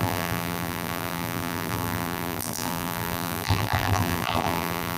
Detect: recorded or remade remade